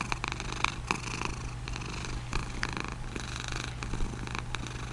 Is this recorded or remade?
recorded